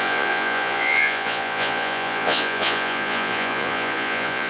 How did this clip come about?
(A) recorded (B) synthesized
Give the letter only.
B